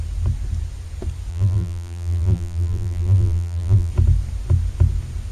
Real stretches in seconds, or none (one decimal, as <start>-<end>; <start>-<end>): 0.0-1.3; 3.9-5.3